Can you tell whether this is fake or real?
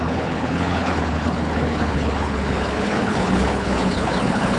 fake